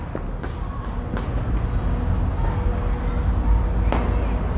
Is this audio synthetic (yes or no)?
no